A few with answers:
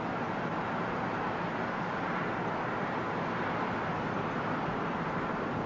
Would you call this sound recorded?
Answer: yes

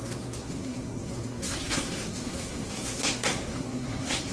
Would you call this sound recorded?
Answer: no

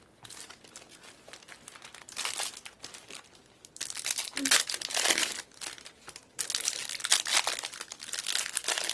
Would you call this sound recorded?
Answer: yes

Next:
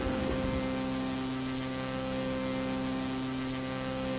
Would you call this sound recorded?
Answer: yes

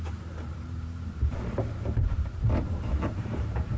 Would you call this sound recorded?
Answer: no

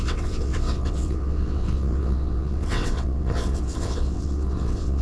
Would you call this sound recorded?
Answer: no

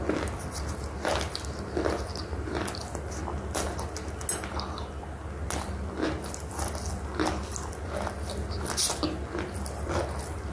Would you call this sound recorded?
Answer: yes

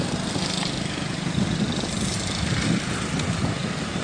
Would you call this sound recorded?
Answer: yes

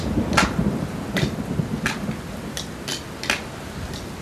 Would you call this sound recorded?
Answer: yes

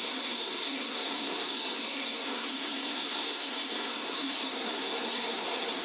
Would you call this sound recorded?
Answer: no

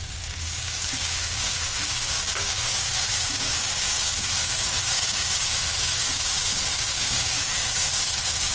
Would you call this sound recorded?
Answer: no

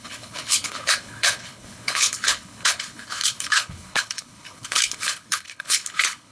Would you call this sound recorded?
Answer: no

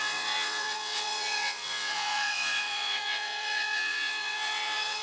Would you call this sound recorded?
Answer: no